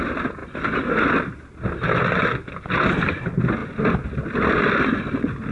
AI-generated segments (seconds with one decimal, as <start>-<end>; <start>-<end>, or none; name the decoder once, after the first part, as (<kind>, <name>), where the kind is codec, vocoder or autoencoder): none